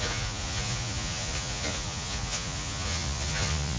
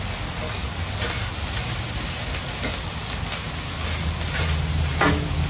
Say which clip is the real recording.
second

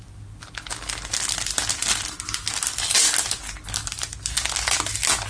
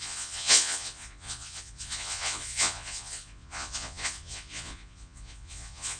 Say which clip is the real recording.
first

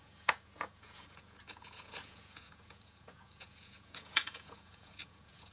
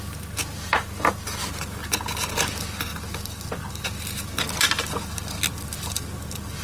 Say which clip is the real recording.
second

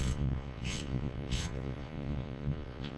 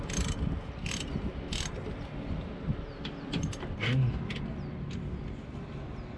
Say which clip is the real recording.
second